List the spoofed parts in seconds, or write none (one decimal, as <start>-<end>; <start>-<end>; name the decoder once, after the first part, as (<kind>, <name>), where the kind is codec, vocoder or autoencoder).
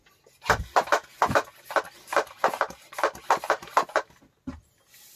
none